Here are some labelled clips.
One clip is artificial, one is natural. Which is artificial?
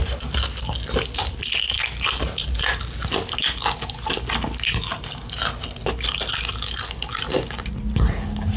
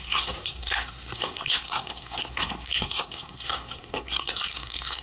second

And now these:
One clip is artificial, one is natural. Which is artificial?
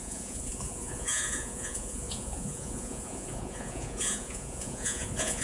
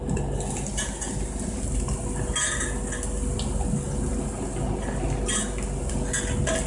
first